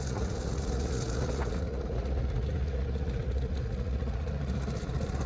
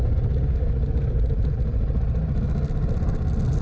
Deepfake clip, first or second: first